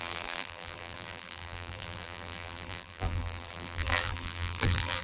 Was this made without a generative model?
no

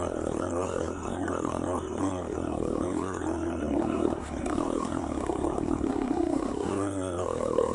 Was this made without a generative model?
no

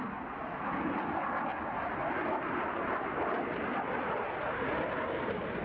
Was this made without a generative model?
yes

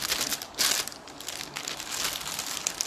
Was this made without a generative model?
yes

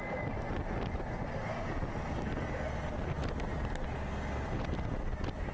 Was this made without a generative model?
yes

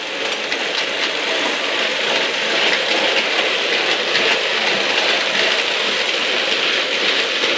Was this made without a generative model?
yes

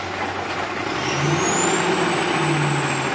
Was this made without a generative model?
yes